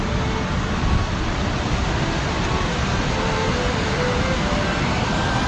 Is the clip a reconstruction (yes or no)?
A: no